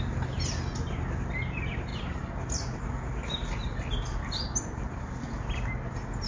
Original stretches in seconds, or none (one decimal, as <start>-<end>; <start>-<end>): 0.0-6.3